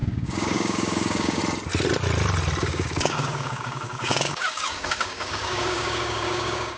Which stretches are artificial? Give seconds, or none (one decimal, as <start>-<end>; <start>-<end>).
0.0-1.4; 2.6-6.8